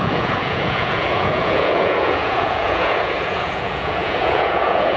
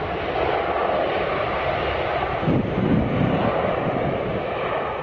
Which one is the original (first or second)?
second